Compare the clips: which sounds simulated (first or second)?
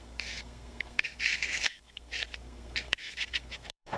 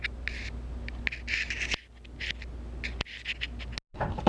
first